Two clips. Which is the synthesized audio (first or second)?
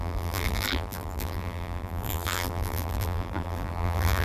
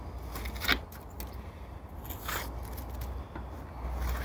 first